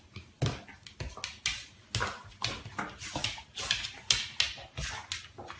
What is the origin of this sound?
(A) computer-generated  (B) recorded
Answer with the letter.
B